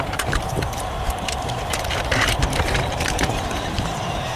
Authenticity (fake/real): fake